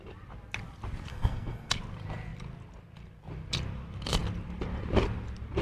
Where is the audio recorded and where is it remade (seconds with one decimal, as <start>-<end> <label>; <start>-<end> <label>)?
0.0-1.1 recorded; 1.1-1.7 remade; 1.7-5.6 recorded